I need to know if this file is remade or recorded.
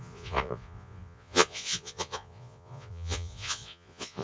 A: remade